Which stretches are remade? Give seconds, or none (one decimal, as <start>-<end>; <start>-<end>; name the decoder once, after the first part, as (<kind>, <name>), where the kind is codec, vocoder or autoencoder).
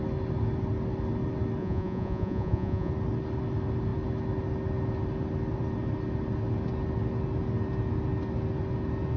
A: 1.6-2.9 (vocoder, Vocos)